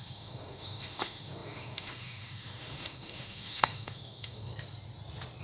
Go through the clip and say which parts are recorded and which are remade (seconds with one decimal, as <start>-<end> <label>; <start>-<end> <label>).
0.0-4.5 remade; 4.5-5.4 recorded